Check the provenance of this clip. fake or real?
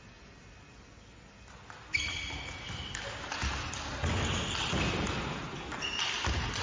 real